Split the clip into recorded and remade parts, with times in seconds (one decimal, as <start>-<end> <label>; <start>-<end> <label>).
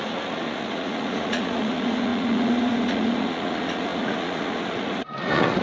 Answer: 0.0-5.6 remade